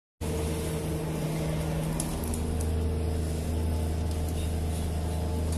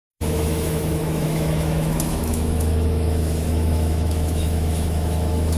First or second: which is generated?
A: second